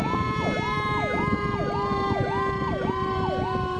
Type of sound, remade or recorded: remade